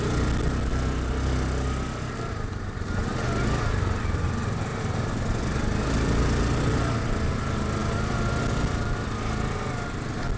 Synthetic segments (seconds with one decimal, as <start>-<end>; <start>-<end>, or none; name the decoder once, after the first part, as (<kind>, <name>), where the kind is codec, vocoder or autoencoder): none

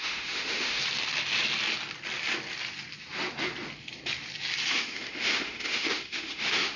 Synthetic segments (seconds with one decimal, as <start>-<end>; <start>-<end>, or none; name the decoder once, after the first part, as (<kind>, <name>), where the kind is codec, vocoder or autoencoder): 0.0-0.8 (autoencoder, DAC-VAE); 4.7-6.8

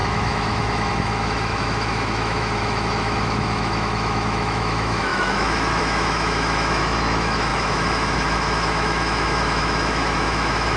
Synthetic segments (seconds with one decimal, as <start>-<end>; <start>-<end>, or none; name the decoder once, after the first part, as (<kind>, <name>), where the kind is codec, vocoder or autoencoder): 0.0-10.8 (autoencoder, DAC-VAE)

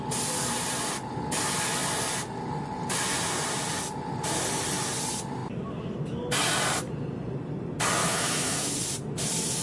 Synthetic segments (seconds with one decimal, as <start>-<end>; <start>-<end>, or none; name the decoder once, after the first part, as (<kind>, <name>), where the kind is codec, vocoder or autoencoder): 8.0-8.7 (autoencoder, DAC-VAE)

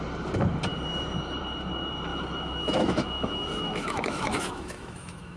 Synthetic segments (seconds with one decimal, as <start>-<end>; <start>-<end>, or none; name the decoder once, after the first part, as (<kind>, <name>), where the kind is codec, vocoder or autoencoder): 2.1-5.4 (autoencoder, DAC-VAE)

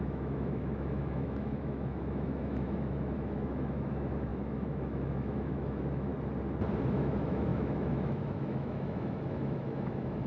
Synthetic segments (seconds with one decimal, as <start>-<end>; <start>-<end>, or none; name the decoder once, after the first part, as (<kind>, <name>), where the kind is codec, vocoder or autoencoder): 0.0-6.1 (autoencoder, DAC-VAE); 6.9-10.3

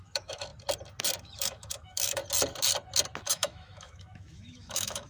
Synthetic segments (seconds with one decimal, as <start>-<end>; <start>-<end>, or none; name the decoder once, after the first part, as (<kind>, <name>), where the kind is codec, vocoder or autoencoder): 0.0-0.5 (autoencoder, DAC-VAE); 1.2-2.2; 3.2-5.1